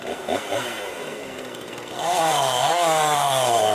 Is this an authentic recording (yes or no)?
no